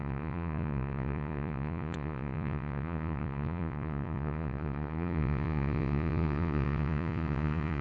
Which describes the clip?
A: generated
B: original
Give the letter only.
A